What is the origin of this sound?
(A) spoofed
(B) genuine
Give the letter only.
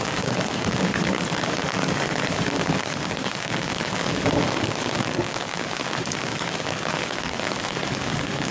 A